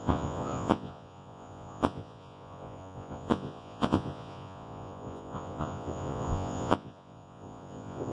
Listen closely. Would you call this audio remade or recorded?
remade